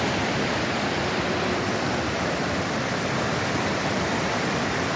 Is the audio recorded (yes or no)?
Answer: no